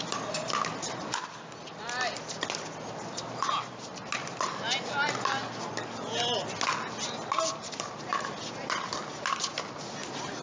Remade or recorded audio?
recorded